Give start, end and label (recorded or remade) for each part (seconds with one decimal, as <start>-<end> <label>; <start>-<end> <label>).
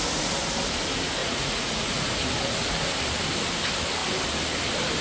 0.0-1.2 recorded; 1.2-2.1 remade; 2.1-5.0 recorded